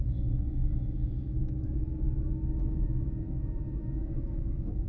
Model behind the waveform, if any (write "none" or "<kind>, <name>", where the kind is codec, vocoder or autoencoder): autoencoder, DAC-VAE